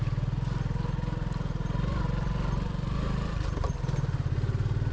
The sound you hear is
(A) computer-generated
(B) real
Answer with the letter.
B